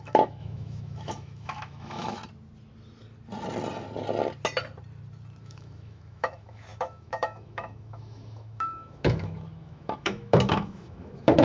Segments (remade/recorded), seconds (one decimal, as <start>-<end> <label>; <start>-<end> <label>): 0.0-2.2 remade; 2.2-5.4 recorded; 5.4-11.4 remade